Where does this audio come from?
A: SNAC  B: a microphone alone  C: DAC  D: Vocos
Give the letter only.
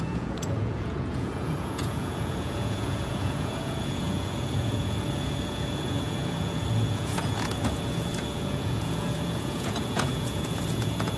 D